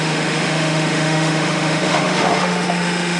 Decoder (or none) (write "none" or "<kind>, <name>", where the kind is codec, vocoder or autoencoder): autoencoder, DAC-VAE